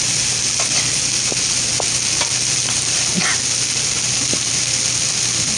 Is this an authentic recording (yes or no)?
yes